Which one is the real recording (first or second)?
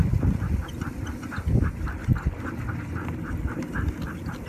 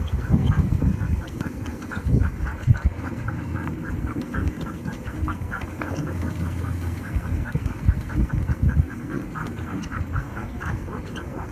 first